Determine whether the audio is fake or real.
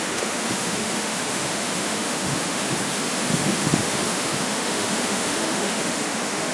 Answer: fake